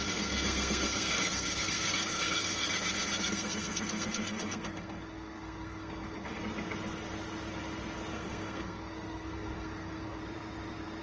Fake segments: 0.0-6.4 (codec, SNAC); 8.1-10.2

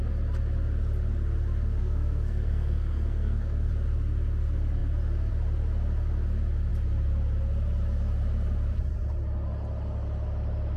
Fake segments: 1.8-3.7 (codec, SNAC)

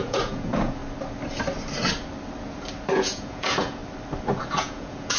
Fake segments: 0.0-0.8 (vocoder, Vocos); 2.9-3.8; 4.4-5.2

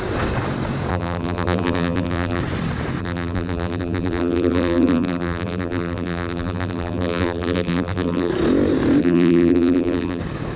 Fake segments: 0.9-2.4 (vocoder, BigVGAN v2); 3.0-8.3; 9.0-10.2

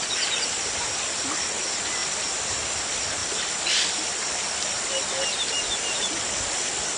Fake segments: none

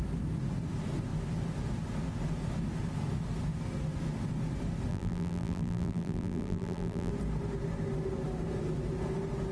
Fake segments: 4.9-7.1 (vocoder, BigVGAN v2)

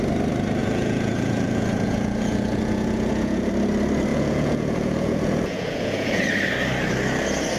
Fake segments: 0.6-3.5 (vocoder, Vocos); 4.1-6.2